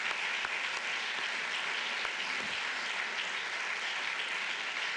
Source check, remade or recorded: recorded